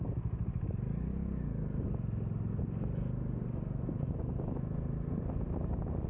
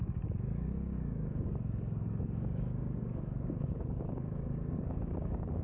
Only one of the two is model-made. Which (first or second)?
second